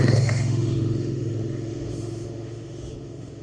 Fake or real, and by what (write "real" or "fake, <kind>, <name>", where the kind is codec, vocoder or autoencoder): fake, autoencoder, DAC-VAE